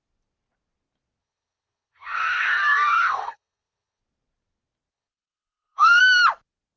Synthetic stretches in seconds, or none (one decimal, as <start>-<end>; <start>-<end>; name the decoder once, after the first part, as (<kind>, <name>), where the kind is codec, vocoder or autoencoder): 1.2-4.0 (codec, DAC); 4.9-6.0